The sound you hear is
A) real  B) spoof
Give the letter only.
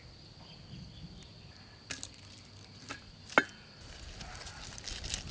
A